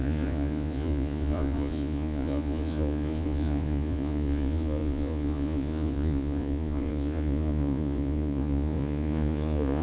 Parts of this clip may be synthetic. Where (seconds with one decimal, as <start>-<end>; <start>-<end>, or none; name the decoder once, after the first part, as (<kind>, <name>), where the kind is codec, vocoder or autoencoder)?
0.0-9.8 (vocoder, Vocos)

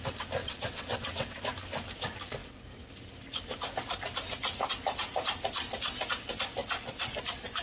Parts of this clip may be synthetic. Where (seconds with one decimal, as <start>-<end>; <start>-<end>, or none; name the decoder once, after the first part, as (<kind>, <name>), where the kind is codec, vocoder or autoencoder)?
0.4-1.4 (vocoder, WaveNeXt)

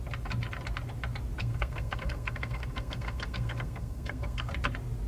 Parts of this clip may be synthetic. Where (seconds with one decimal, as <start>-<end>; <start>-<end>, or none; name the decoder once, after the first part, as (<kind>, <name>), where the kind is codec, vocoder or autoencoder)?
1.4-4.5 (codec, SNAC)

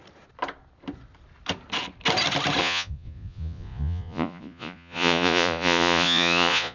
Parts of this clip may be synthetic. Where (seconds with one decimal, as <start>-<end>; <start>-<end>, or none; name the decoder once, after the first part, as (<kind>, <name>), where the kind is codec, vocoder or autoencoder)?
2.6-6.7 (vocoder, Vocos)

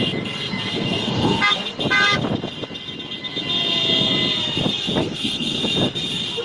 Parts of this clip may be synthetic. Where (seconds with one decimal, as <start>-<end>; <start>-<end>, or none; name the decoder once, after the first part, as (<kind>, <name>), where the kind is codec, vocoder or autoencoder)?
0.7-1.4 (codec, SNAC); 5.0-5.6

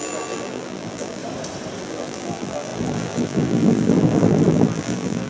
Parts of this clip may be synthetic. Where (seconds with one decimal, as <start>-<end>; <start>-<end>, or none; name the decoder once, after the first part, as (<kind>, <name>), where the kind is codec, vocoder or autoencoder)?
0.0-1.2 (vocoder, BigVGAN v2); 1.8-5.3